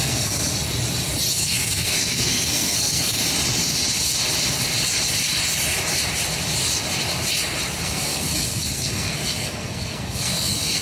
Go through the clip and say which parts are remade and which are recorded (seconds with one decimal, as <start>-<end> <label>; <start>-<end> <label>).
0.0-0.5 remade; 0.5-1.3 recorded; 1.3-3.2 remade; 3.2-7.8 recorded; 7.8-10.8 remade